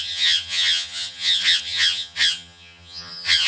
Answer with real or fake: fake